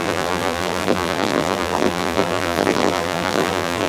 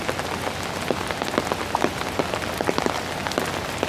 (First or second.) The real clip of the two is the second